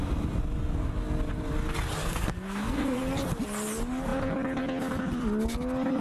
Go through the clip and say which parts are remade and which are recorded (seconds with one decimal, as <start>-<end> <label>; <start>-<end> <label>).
0.0-2.0 recorded; 2.0-3.0 remade; 3.0-6.0 recorded